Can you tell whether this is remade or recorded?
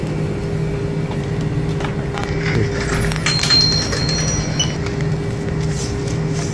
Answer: recorded